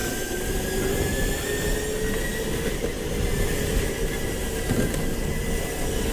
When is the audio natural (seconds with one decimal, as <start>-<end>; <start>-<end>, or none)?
1.3-6.1